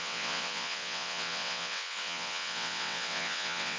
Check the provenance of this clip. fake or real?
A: fake